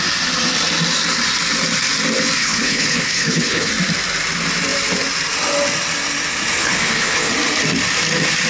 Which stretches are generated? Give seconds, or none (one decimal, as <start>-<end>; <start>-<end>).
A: 2.4-3.7; 6.6-7.3